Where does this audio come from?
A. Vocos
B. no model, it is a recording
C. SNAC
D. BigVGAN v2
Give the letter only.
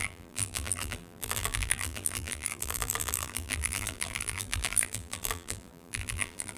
D